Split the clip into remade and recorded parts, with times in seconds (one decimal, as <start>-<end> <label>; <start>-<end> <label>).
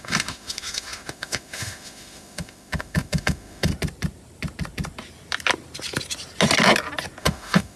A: 0.0-3.7 remade; 3.7-7.2 recorded; 7.2-7.8 remade